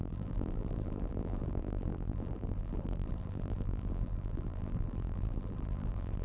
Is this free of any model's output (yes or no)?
no